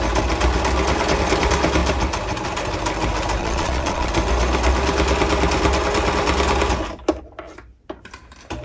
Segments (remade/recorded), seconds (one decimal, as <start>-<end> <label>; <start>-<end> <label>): 0.0-3.4 recorded; 3.4-4.1 remade; 4.1-8.6 recorded